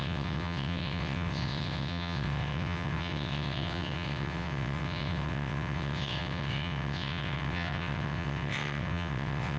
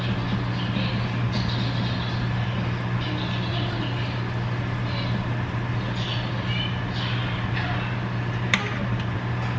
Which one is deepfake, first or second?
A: first